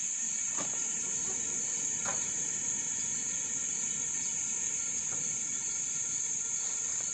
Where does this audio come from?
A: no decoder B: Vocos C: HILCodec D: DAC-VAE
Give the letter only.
A